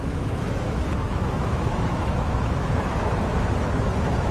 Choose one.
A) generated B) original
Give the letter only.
A